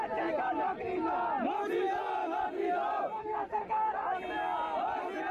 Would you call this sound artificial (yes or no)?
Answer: no